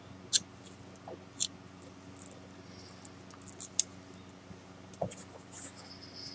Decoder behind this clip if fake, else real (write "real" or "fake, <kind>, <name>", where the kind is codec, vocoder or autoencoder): real